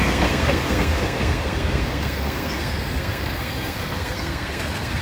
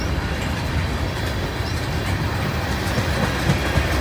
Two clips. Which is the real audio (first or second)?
second